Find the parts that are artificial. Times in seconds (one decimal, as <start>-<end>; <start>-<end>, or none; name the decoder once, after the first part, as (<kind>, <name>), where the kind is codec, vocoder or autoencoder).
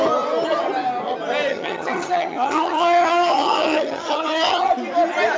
1.5-4.7 (vocoder, HiFi-GAN)